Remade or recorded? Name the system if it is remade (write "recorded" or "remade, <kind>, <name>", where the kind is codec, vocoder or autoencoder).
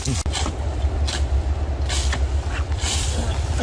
recorded